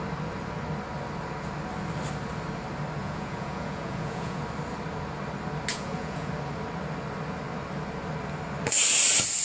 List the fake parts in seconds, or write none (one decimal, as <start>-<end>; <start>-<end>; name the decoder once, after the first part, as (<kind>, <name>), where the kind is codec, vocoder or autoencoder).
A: 3.0-4.4 (vocoder, Vocos); 5.7-6.3